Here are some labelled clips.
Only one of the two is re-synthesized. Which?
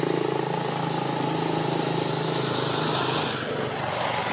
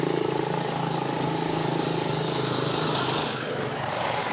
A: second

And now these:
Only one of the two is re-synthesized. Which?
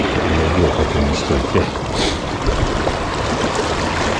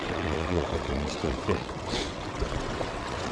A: second